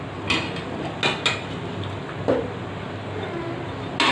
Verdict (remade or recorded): recorded